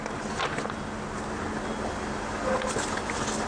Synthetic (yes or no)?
no